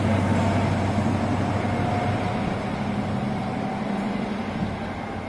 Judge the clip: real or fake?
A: real